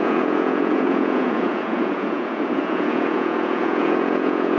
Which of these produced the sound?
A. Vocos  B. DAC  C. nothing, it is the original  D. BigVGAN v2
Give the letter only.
A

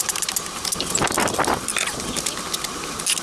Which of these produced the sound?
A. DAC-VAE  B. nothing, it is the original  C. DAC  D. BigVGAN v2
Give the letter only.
B